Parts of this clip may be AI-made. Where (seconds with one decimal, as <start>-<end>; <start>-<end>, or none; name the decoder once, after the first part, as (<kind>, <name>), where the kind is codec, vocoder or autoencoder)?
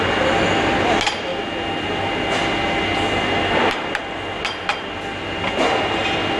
none